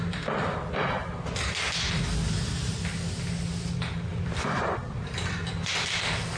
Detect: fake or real real